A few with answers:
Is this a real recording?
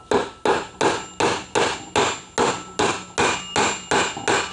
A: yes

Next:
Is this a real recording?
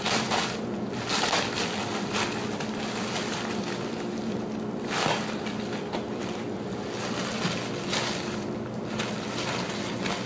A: yes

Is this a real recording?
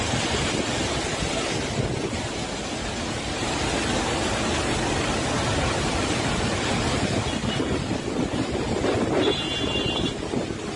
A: yes